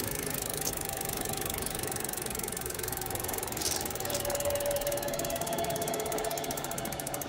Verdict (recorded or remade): remade